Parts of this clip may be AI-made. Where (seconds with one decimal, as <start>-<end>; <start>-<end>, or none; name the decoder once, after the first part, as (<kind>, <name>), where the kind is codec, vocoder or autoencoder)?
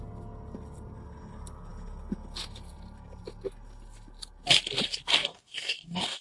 5.2-6.2 (codec, DAC)